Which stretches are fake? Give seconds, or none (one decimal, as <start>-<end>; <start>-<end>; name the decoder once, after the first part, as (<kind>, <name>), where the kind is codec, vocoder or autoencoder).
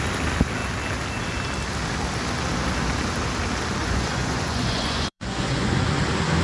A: 3.8-6.0 (vocoder, Vocos)